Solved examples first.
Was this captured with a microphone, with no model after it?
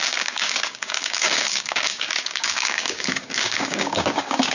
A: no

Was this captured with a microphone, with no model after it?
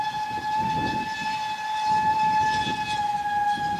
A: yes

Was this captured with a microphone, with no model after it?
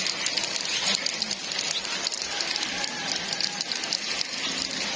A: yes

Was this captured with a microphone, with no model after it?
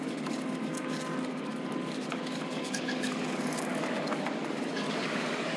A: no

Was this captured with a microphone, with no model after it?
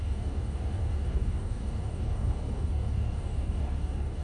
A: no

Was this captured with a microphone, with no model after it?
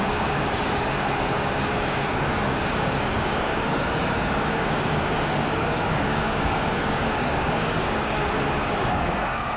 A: no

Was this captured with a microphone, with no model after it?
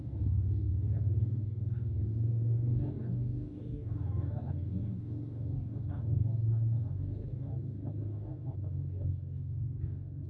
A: no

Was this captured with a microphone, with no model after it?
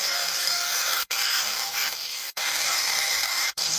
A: no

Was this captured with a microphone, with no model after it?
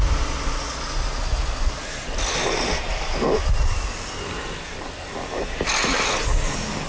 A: yes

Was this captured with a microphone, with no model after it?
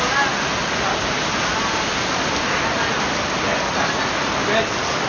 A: yes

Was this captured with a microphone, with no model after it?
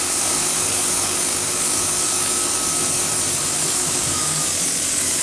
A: no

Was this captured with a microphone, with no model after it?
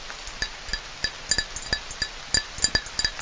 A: yes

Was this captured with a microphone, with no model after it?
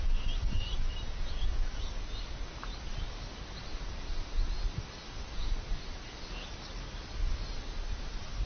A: yes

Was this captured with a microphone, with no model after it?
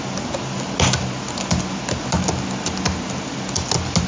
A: yes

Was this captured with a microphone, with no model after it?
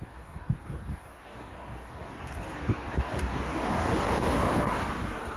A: no